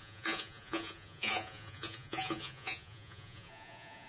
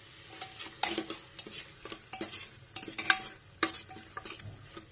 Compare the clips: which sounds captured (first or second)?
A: second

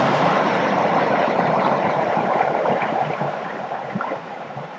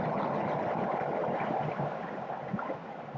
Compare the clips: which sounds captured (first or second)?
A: second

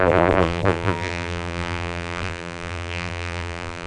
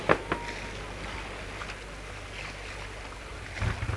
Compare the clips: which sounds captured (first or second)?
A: second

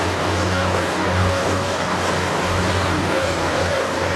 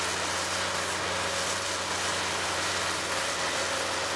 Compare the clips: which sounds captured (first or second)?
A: second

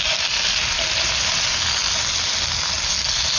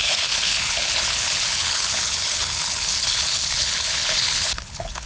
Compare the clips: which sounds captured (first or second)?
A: first